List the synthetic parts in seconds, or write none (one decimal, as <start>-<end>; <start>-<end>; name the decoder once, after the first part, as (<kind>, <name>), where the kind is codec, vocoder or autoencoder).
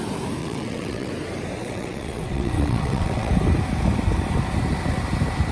0.4-1.1 (vocoder, WaveNeXt); 1.6-3.3